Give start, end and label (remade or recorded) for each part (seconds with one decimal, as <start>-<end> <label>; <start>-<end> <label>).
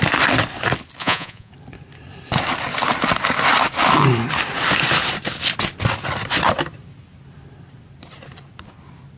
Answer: 0.0-1.0 recorded; 1.0-1.5 remade; 1.5-9.2 recorded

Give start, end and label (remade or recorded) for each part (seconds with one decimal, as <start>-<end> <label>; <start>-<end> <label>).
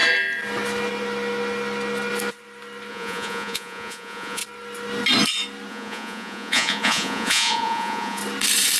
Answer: 0.0-2.9 recorded; 2.9-4.4 remade; 4.4-5.7 recorded; 5.7-8.2 remade; 8.2-8.8 recorded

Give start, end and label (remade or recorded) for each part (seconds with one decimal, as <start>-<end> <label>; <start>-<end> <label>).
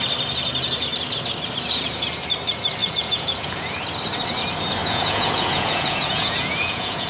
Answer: 0.0-2.8 recorded; 2.8-3.7 remade; 3.7-4.8 recorded; 4.8-7.1 remade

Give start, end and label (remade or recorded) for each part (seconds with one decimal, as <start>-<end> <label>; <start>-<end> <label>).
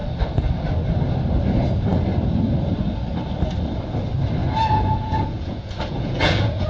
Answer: 0.0-4.4 recorded; 4.4-6.7 remade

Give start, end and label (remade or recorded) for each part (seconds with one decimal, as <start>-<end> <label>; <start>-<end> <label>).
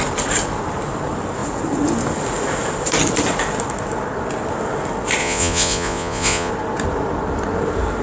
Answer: 0.0-5.2 recorded; 5.2-6.5 remade; 6.5-8.0 recorded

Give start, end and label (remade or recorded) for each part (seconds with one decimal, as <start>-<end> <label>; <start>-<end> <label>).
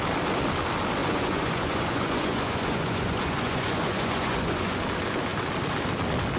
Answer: 0.0-1.0 recorded; 1.0-4.8 remade; 4.8-6.4 recorded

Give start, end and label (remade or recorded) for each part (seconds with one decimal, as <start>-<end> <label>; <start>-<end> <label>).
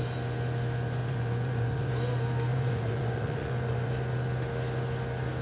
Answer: 0.0-1.0 recorded; 1.0-1.9 remade; 1.9-2.5 recorded; 2.5-3.9 remade; 3.9-5.4 recorded